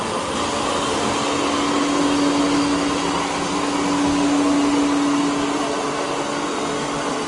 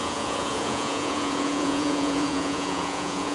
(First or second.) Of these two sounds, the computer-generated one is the second